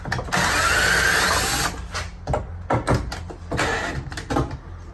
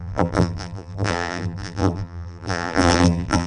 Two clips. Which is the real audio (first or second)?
first